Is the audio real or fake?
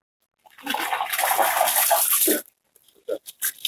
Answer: real